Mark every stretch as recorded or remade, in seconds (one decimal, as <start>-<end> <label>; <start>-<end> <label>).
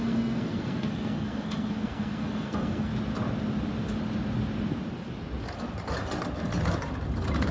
0.0-2.9 remade; 2.9-7.5 recorded